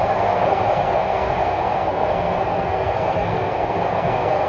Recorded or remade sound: remade